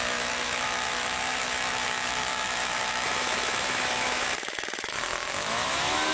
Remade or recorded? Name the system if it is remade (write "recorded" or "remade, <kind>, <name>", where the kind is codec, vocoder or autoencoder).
remade, autoencoder, DAC-VAE